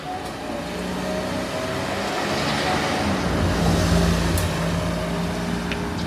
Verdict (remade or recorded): recorded